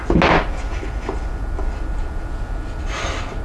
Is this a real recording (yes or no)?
yes